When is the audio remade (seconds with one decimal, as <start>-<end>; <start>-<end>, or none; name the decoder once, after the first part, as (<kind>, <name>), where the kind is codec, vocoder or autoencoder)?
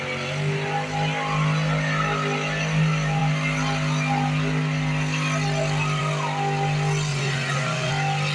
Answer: 7.1-7.9 (vocoder, Vocos)